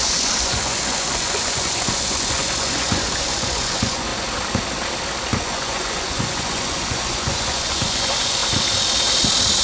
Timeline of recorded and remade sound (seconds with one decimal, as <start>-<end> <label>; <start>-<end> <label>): 0.0-4.1 remade; 4.1-5.4 recorded; 5.4-8.4 remade; 8.4-9.6 recorded